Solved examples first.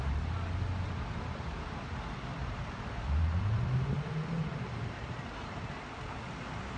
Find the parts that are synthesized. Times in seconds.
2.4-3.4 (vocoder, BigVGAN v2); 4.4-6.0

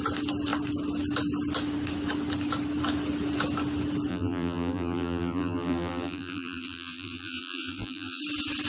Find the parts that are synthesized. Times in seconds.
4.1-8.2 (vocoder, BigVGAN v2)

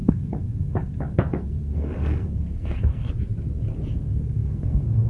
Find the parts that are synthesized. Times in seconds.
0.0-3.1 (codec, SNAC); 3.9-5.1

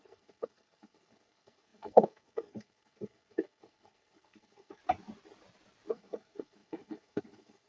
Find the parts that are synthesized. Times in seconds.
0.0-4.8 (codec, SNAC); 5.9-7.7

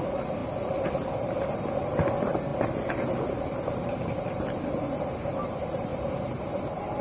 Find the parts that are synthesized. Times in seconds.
0.0-7.0 (vocoder, BigVGAN v2)